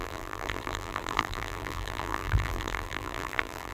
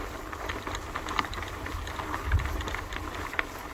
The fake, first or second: first